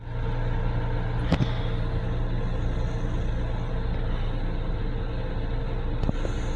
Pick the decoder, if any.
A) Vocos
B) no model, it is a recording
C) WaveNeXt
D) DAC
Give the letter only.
B